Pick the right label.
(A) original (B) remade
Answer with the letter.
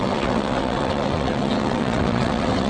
B